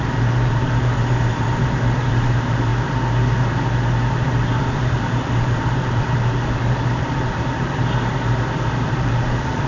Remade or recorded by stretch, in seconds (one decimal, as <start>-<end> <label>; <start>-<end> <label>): 0.0-2.7 remade; 2.7-4.1 recorded; 4.1-7.8 remade; 7.8-8.7 recorded; 8.7-9.7 remade